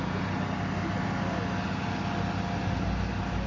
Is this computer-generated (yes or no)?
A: no